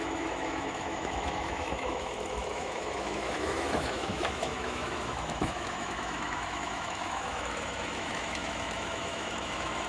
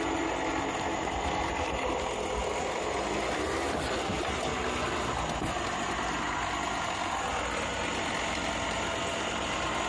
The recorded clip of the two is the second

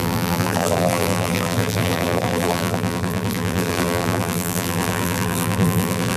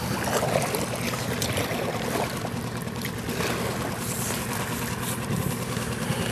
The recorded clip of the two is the second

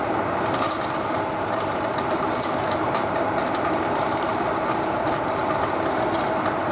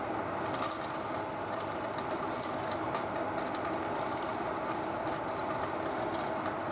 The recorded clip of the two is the second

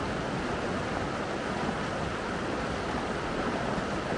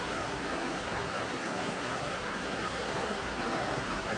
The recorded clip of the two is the first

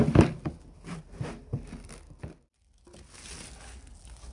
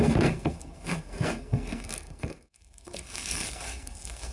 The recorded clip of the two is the first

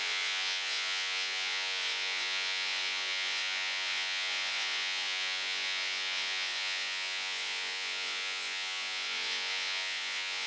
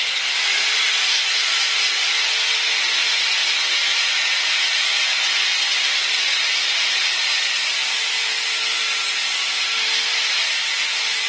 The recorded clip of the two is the second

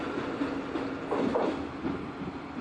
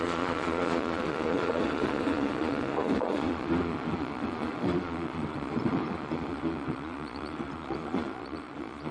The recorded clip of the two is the first